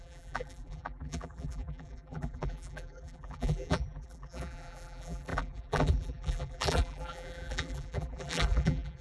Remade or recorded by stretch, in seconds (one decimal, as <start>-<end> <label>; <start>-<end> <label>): 0.0-9.0 remade